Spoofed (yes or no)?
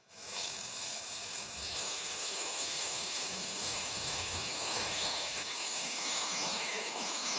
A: yes